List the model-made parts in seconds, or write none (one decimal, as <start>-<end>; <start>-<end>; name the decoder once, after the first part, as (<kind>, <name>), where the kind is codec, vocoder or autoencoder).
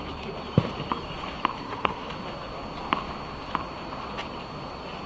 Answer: 1.6-2.1 (codec, SNAC)